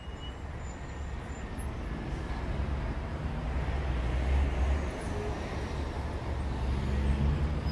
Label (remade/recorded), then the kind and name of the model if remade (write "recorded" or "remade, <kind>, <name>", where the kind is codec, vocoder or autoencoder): recorded